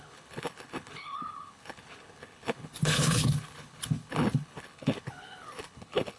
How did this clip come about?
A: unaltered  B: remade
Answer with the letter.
B